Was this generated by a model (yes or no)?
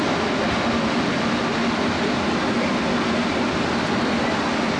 no